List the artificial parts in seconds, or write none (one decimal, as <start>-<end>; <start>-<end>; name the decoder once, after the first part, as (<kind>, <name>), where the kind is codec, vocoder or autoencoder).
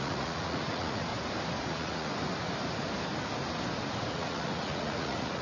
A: 0.0-1.1 (vocoder, Vocos); 1.6-2.1; 4.1-5.4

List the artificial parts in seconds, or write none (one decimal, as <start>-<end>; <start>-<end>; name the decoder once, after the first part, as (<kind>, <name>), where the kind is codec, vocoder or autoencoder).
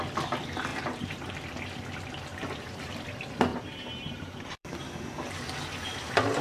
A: 0.7-1.3 (vocoder, BigVGAN v2); 2.3-2.9; 3.5-4.8